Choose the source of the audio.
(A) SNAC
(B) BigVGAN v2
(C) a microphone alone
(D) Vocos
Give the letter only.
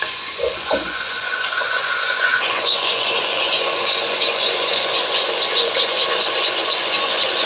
D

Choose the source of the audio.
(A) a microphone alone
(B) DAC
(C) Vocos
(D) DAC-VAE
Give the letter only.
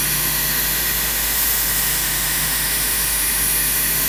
D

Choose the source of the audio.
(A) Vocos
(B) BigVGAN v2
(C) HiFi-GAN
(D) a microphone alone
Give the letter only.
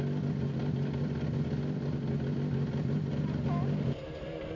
D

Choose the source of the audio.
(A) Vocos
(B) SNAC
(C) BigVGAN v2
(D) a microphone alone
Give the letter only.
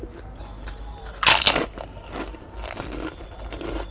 D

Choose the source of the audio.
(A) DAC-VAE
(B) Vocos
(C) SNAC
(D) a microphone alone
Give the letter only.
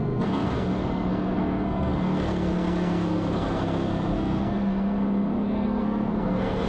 C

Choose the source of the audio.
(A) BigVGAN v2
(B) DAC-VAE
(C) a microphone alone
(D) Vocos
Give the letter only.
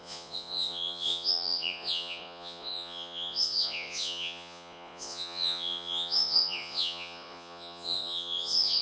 D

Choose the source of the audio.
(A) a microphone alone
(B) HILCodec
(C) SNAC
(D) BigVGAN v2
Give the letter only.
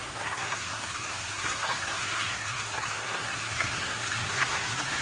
C